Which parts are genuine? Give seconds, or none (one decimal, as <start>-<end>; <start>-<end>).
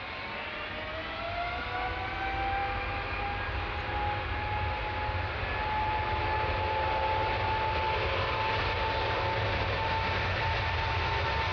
0.0-11.5